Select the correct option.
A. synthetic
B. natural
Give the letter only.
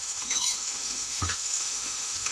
A